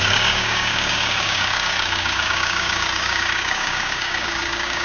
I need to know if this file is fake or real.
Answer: fake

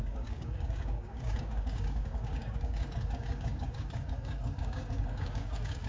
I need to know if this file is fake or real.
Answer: fake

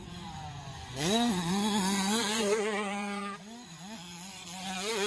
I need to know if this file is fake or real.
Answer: fake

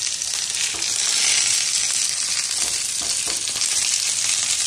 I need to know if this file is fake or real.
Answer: real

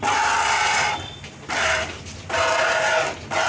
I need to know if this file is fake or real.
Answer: real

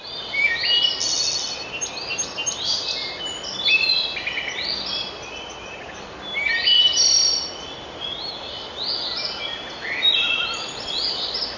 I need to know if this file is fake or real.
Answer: real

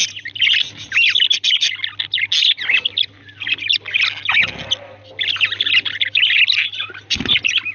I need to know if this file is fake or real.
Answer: real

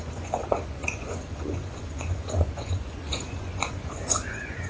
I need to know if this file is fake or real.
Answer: fake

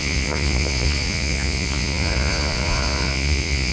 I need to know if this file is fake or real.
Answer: fake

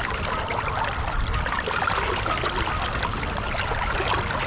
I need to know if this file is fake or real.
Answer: real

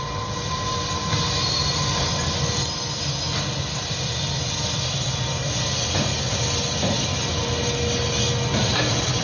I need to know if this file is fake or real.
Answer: real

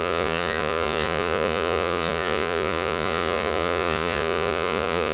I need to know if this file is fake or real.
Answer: fake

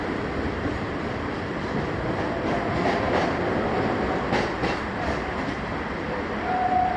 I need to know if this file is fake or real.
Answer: real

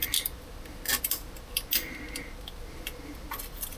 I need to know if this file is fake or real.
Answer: real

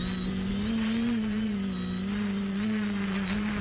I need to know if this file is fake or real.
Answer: real